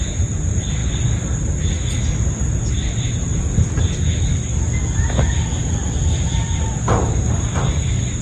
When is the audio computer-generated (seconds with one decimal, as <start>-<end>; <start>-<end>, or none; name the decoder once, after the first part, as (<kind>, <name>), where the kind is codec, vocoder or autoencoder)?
0.0-0.8 (vocoder, BigVGAN v2); 2.3-3.3; 6.6-8.2